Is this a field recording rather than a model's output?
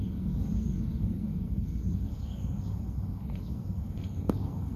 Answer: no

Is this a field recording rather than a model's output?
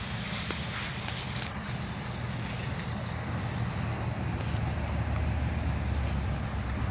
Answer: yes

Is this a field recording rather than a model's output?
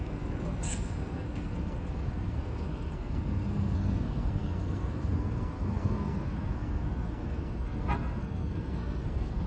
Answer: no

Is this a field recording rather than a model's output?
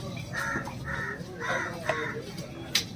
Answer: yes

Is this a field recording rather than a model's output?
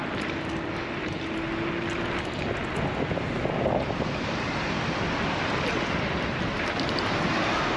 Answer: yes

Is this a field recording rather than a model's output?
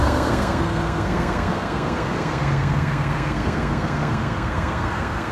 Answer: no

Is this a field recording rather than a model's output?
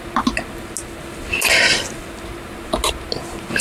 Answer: yes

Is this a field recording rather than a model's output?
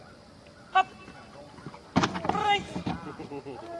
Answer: yes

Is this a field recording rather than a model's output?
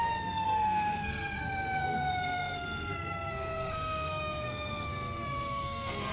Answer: no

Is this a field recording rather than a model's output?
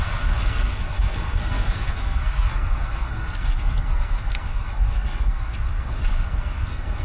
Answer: no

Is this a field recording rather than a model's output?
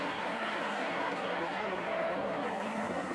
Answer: no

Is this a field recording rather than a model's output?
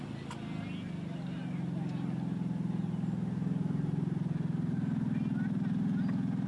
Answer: yes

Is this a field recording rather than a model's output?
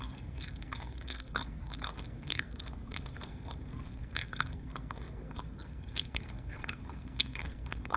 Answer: no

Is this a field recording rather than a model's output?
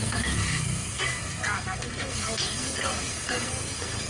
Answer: no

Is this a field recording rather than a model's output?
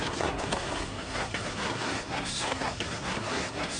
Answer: no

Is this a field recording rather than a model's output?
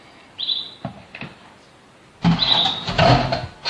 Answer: yes